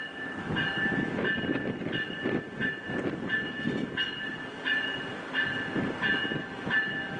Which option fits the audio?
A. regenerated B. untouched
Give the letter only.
B